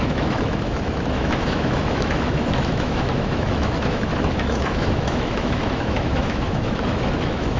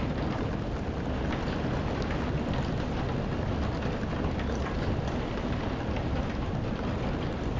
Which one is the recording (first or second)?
second